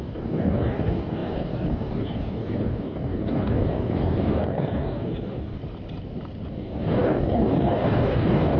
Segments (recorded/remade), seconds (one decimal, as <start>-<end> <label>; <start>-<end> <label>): 0.0-5.6 remade; 5.6-6.5 recorded; 6.5-8.6 remade